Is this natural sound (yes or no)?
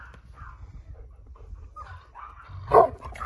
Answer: no